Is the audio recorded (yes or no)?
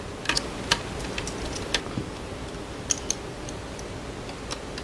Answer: yes